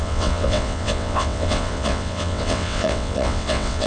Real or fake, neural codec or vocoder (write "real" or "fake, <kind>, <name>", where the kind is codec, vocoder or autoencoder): fake, vocoder, WaveNeXt